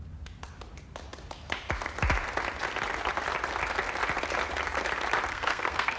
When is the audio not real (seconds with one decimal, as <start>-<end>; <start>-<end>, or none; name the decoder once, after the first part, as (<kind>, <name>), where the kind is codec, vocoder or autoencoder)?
5.3-6.0 (codec, SNAC)